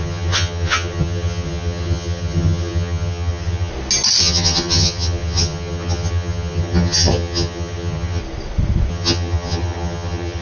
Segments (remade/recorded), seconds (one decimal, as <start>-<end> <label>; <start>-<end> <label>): 0.0-3.7 remade; 3.7-4.2 recorded; 4.2-8.2 remade; 8.2-8.9 recorded; 8.9-10.4 remade